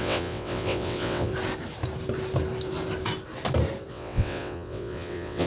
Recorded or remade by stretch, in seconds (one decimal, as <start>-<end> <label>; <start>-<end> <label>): 0.0-1.3 remade; 1.3-3.9 recorded; 3.9-5.5 remade